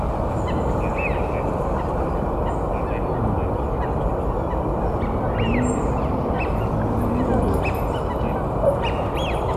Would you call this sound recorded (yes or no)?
yes